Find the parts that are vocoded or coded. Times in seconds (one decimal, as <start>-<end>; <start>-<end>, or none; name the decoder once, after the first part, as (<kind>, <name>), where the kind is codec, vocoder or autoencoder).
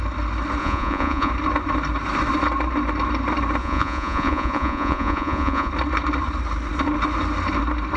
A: 0.6-1.3 (vocoder, Vocos); 3.6-5.7